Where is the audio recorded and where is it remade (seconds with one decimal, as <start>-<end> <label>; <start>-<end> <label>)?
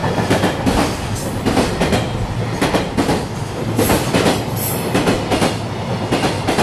0.0-1.0 remade; 1.0-6.6 recorded